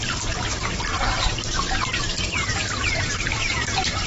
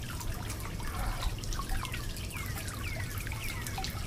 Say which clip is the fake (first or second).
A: first